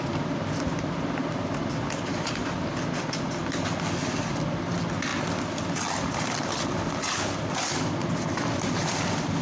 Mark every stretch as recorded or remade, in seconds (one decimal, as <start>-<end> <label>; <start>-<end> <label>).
0.0-2.1 recorded; 2.1-2.9 remade; 2.9-5.1 recorded; 5.1-7.9 remade; 7.9-9.4 recorded